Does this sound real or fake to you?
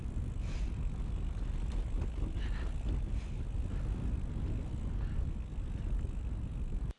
real